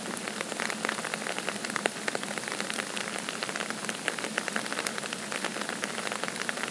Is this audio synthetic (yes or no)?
no